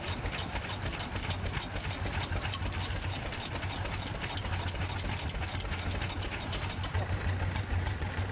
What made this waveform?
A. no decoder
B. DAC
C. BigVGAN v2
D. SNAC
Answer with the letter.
A